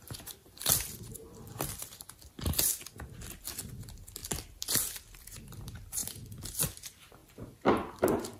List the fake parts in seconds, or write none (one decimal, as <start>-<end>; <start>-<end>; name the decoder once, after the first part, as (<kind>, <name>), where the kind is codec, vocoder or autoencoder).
0.0-2.7 (vocoder, BigVGAN v2); 3.4-4.2; 5.2-6.0; 6.5-7.2; 7.9-8.4